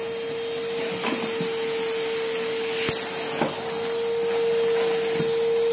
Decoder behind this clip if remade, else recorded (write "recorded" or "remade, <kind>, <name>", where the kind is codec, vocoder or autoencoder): recorded